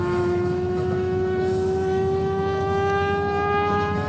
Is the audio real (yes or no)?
no